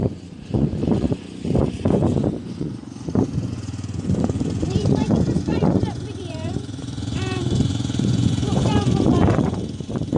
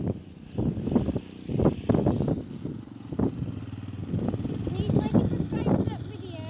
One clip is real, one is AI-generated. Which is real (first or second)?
second